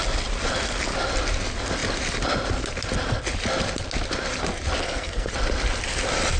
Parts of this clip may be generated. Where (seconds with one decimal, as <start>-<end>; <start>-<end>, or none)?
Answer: 4.8-5.3